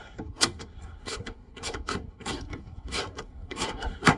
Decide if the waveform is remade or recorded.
remade